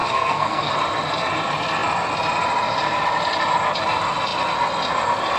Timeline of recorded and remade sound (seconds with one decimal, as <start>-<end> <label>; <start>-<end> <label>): 0.0-0.7 remade; 0.7-5.4 recorded